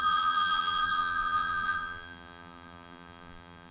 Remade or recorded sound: remade